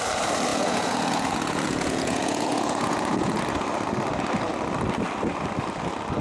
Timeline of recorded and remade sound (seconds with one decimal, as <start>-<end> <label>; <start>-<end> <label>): 0.0-0.5 recorded; 0.5-3.4 remade; 3.4-6.2 recorded

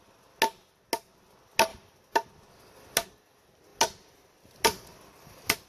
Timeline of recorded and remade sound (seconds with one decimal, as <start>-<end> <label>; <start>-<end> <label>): 0.0-5.7 recorded

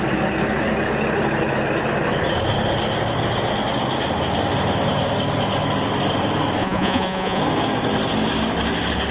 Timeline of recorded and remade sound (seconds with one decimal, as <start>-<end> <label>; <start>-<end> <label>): 0.0-6.6 recorded; 6.6-7.4 remade; 7.4-9.1 recorded

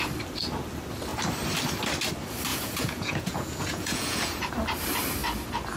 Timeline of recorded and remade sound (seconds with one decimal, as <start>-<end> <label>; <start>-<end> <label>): 0.0-2.5 recorded; 2.5-4.4 remade; 4.4-5.8 recorded